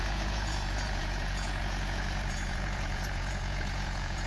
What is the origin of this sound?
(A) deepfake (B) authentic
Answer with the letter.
A